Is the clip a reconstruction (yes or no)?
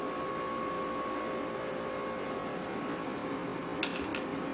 no